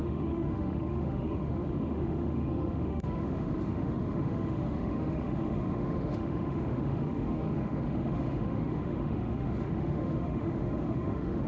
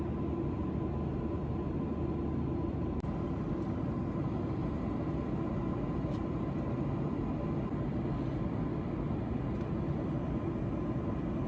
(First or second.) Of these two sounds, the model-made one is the first